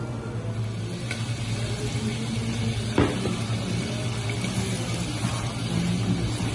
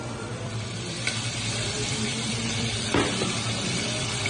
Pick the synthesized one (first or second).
second